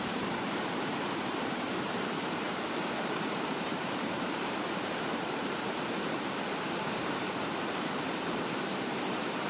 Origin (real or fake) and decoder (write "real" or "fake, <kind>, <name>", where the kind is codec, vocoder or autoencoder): fake, vocoder, BigVGAN v2